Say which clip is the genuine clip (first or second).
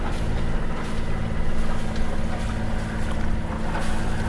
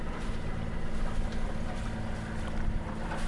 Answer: first